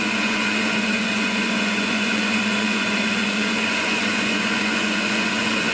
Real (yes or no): no